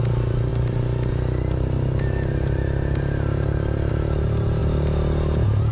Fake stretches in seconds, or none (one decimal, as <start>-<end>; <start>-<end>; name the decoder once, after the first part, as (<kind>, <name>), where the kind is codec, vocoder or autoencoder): none